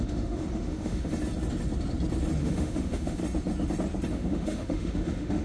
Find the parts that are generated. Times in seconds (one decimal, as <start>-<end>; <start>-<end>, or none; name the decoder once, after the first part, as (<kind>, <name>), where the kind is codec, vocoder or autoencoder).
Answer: 0.0-1.1 (autoencoder, DAC-VAE); 2.4-3.2; 4.1-5.4